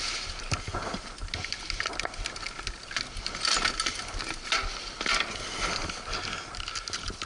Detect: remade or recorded recorded